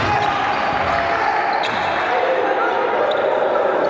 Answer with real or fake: real